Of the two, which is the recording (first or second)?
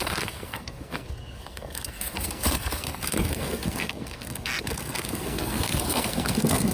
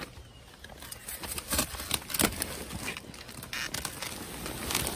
second